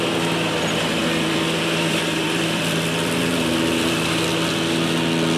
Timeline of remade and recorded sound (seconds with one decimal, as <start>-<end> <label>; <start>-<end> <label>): 0.0-1.0 recorded; 1.0-4.2 remade; 4.2-5.4 recorded